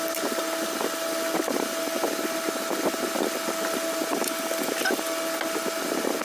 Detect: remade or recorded recorded